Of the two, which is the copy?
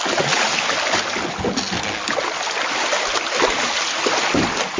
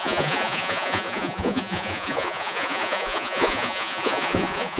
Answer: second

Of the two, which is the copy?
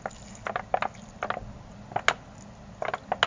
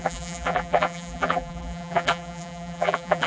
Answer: second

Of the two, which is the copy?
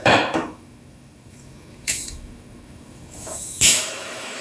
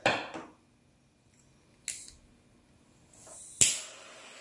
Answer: first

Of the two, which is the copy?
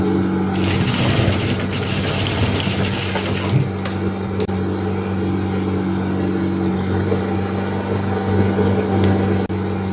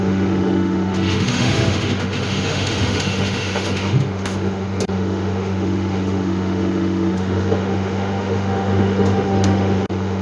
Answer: second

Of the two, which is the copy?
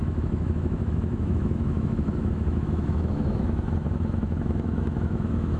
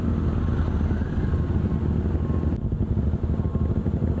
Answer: first